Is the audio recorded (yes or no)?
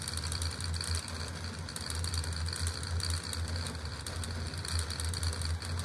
yes